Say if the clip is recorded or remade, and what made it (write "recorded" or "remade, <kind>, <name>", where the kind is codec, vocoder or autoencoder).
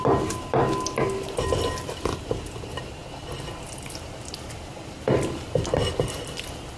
recorded